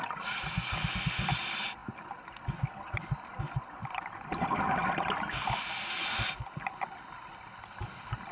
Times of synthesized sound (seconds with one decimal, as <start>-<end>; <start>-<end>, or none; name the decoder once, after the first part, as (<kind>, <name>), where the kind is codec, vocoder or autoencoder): none